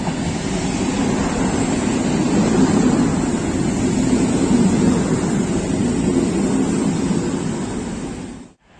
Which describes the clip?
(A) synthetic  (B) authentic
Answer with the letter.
B